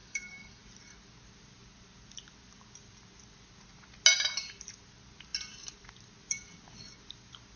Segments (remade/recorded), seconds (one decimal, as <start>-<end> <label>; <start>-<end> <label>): 0.0-0.6 remade; 0.6-7.6 recorded